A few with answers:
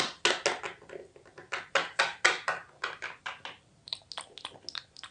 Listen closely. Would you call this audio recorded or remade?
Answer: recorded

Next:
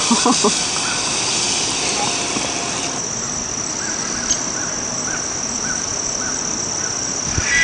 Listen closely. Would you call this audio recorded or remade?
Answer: recorded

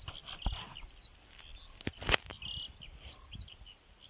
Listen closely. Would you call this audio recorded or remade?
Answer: recorded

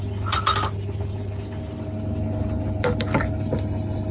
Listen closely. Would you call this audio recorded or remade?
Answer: recorded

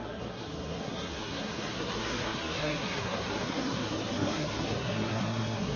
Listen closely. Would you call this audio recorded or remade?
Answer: remade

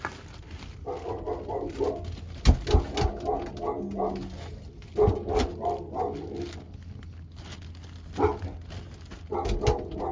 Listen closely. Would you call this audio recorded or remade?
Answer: recorded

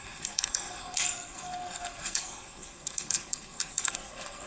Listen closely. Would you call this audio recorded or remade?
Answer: remade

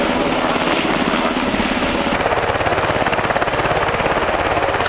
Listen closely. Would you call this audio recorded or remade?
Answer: recorded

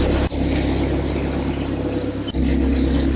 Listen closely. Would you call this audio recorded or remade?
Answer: recorded